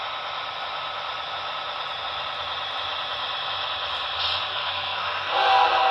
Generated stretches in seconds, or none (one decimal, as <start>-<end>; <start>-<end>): 4.5-5.3